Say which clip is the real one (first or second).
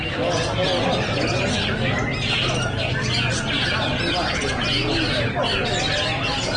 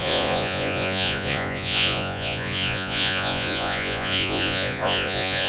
first